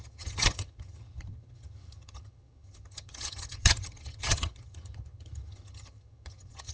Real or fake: fake